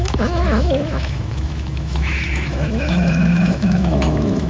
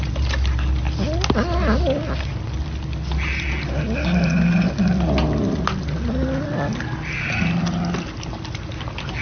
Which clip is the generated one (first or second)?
first